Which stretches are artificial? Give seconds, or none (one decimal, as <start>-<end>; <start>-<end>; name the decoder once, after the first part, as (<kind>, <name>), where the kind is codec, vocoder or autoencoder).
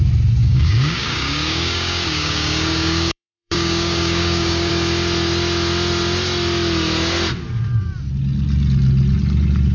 0.4-4.7 (codec, DAC)